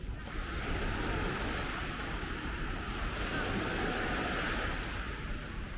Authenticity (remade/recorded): recorded